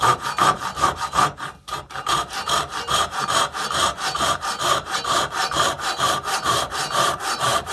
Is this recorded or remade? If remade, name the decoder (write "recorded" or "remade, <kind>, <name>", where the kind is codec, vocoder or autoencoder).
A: remade, vocoder, BigVGAN v2